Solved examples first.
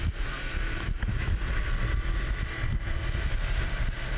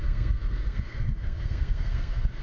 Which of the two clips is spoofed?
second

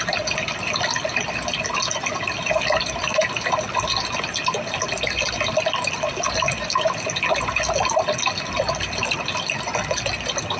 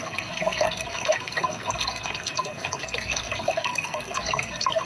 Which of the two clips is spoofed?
second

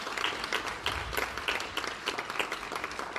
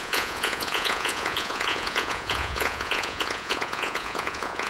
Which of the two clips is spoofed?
second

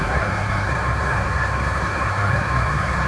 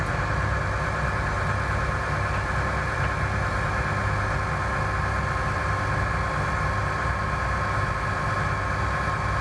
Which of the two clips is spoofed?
first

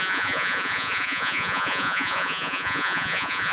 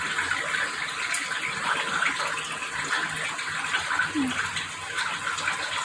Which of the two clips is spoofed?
first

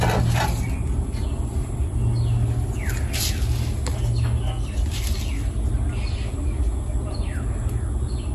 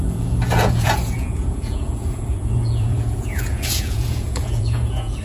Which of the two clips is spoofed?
second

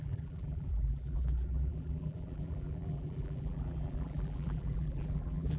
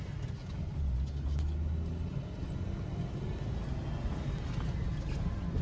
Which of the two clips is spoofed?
first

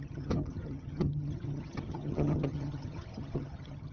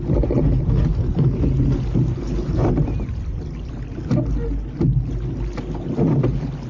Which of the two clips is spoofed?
first